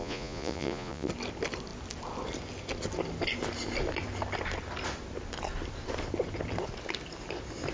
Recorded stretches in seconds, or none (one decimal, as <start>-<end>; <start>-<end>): 1.1-7.7